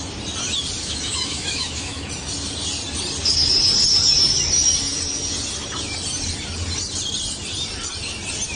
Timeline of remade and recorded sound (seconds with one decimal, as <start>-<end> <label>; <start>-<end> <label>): 0.0-0.8 recorded; 0.8-2.1 remade; 2.1-8.6 recorded